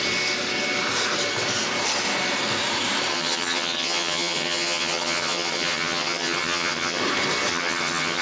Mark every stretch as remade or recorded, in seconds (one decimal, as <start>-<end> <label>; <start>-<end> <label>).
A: 0.0-3.1 recorded; 3.1-7.0 remade; 7.0-7.5 recorded; 7.5-8.2 remade